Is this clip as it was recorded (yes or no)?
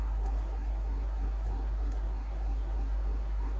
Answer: no